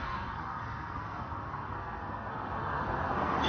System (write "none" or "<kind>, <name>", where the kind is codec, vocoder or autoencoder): codec, SNAC